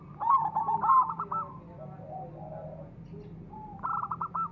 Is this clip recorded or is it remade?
recorded